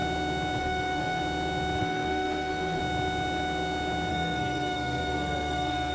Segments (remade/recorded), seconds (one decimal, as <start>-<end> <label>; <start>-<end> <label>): 0.0-0.6 recorded; 0.6-1.2 remade; 1.2-1.8 recorded; 1.8-2.8 remade; 2.8-4.1 recorded; 4.1-5.9 remade